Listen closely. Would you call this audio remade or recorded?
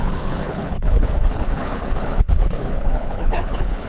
remade